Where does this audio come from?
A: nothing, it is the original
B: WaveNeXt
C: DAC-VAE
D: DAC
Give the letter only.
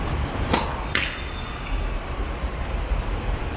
A